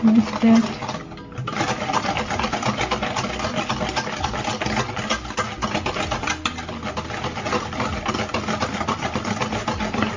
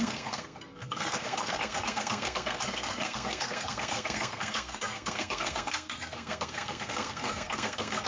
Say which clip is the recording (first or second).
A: first